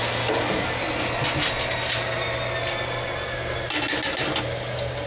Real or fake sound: real